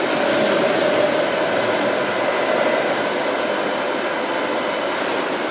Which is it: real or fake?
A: fake